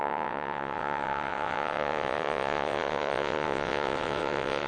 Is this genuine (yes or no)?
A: no